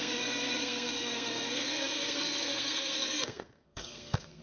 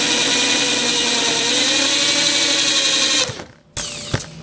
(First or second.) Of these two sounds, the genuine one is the second